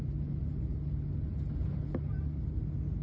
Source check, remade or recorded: recorded